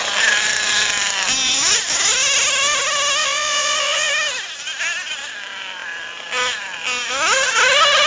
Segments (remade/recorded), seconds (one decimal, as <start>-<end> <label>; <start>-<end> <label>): 0.0-3.2 recorded; 3.2-4.1 remade; 4.1-8.1 recorded